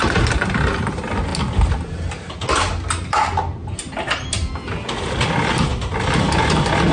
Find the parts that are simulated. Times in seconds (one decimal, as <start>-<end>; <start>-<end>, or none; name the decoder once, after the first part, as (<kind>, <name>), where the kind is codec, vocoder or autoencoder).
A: none